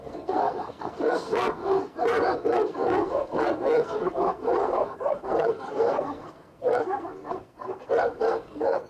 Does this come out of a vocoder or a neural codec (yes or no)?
yes